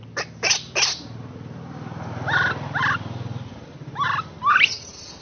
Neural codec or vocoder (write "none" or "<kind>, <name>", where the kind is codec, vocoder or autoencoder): none